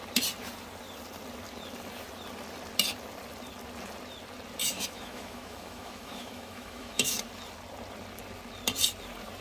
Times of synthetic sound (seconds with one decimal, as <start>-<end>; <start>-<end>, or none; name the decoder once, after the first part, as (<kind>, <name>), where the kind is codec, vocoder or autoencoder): 4.6-7.2 (autoencoder, DAC-VAE)